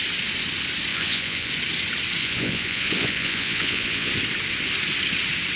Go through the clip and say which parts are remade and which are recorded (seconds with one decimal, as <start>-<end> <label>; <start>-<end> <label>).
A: 0.0-0.9 recorded; 0.9-1.5 remade; 1.5-2.2 recorded; 2.2-4.1 remade; 4.1-5.6 recorded

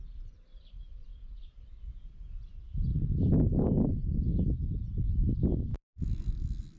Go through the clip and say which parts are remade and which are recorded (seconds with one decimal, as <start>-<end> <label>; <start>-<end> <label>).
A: 0.0-1.1 recorded; 1.1-1.9 remade; 1.9-5.7 recorded; 5.7-6.2 remade; 6.2-6.8 recorded

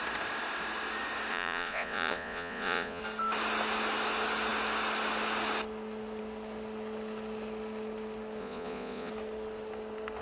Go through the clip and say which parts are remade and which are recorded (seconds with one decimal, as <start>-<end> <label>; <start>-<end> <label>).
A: 0.0-1.3 recorded; 1.3-3.0 remade; 3.0-8.4 recorded; 8.4-9.1 remade; 9.1-10.2 recorded